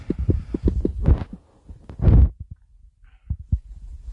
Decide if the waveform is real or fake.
real